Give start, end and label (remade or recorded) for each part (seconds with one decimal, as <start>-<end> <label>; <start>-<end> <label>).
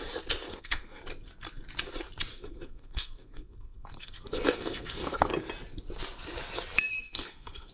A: 0.0-0.5 recorded; 0.5-1.0 remade; 1.0-2.3 recorded; 2.3-5.3 remade; 5.3-6.9 recorded; 6.9-7.7 remade